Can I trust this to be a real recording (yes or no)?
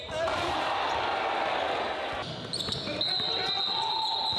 yes